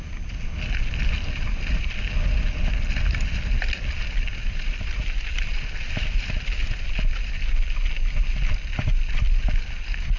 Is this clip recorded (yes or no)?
yes